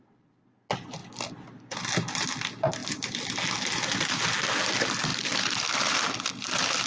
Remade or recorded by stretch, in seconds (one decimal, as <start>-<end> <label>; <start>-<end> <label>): 0.0-6.9 recorded